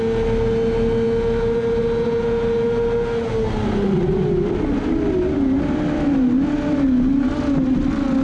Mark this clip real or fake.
real